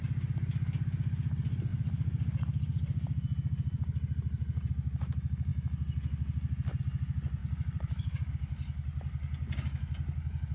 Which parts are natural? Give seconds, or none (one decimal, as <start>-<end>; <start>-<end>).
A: 0.0-1.7; 4.7-7.4; 8.3-10.5